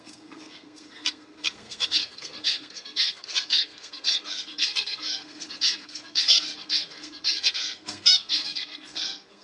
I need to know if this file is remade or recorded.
remade